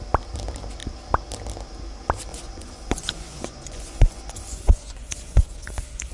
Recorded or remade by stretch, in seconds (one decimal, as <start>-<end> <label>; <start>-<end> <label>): 0.0-2.3 recorded; 2.3-6.1 remade